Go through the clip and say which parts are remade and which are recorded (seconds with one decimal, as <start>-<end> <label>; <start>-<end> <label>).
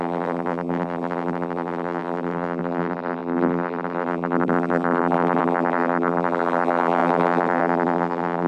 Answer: 0.0-8.5 remade